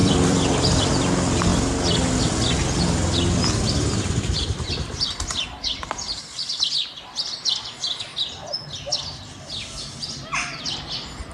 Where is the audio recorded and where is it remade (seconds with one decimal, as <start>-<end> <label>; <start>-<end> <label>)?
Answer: 0.0-0.9 remade; 0.9-11.3 recorded